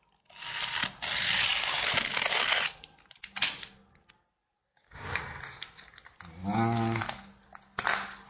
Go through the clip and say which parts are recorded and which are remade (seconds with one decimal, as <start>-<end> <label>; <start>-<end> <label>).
0.0-4.7 recorded; 4.7-5.2 remade; 5.2-6.4 recorded; 6.4-7.0 remade; 7.0-8.3 recorded

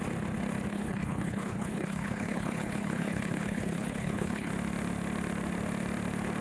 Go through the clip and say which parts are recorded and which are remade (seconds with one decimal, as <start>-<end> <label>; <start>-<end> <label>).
0.0-0.7 recorded; 0.7-4.5 remade; 4.5-6.4 recorded

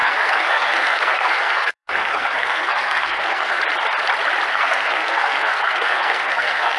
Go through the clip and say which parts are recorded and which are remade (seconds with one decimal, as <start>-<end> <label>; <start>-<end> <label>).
0.0-3.6 remade; 3.6-4.5 recorded; 4.5-6.8 remade

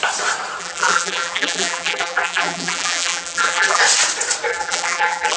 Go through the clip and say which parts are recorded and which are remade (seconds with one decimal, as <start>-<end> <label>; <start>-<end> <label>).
0.0-0.6 recorded; 0.6-3.8 remade; 3.8-4.5 recorded; 4.5-5.4 remade

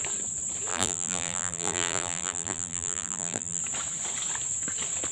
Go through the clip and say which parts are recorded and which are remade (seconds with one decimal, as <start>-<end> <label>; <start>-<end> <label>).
0.0-0.7 recorded; 0.7-3.6 remade; 3.6-5.1 recorded

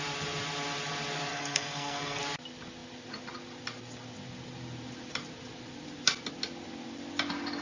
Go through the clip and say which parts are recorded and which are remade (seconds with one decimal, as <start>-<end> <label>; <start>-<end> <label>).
0.0-1.3 recorded; 1.3-2.2 remade; 2.2-7.6 recorded

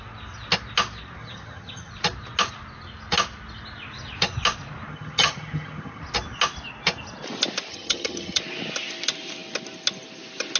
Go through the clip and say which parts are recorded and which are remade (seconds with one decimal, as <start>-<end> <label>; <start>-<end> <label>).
0.0-1.2 recorded; 1.2-1.9 remade; 1.9-4.9 recorded; 4.9-6.0 remade; 6.0-7.7 recorded; 7.7-8.4 remade; 8.4-10.6 recorded

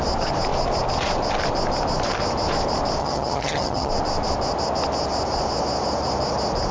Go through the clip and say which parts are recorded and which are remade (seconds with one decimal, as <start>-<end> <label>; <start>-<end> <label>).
0.0-3.0 recorded; 3.0-3.9 remade; 3.9-6.7 recorded